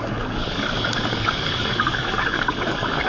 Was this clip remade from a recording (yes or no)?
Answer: yes